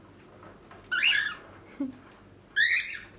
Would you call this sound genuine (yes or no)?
yes